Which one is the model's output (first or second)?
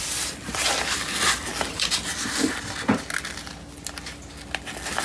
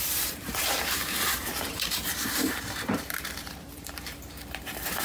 second